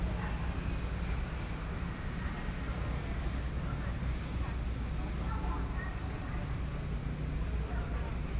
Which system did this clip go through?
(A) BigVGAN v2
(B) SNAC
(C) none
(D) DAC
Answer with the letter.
C